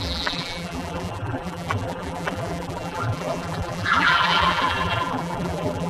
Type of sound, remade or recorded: remade